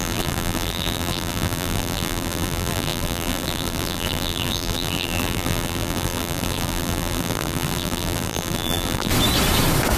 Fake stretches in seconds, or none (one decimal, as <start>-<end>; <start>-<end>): 0.0-9.1